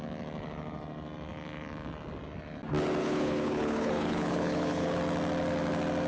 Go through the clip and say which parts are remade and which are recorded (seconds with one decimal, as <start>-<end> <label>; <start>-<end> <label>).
0.0-3.0 recorded; 3.0-5.0 remade; 5.0-6.1 recorded